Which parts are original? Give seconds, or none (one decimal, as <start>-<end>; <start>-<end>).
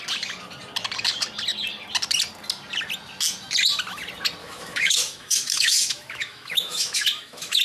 0.0-4.4